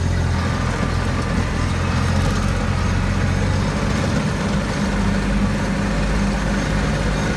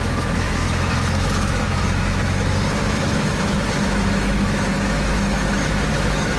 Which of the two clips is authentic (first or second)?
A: first